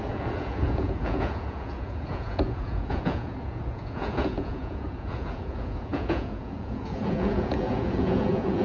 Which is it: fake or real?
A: fake